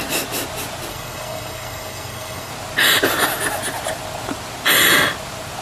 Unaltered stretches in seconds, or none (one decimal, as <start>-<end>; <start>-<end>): 0.0-0.9; 2.5-5.6